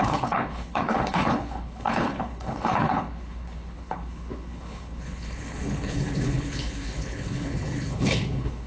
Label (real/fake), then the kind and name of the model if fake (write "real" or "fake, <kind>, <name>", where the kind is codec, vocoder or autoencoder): fake, codec, HILCodec